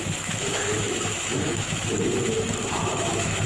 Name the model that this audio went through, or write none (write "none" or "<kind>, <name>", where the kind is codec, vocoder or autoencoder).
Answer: autoencoder, DAC-VAE